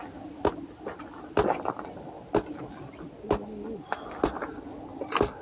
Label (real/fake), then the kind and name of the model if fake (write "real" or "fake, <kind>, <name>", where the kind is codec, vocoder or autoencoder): real